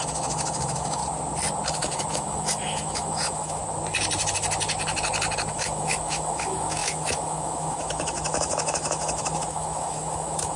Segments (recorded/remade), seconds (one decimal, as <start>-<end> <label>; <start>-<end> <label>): 0.0-1.0 remade; 1.0-1.7 recorded; 1.7-3.6 remade; 3.6-5.5 recorded; 5.5-10.6 remade